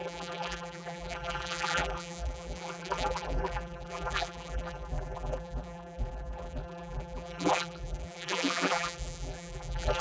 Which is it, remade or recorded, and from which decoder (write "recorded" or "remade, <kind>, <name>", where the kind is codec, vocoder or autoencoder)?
remade, vocoder, BigVGAN v2